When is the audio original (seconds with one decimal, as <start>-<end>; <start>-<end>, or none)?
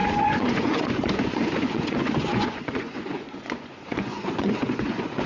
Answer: none